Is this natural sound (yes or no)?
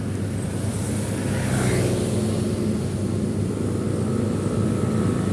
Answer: yes